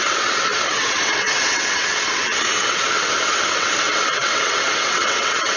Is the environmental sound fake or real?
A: fake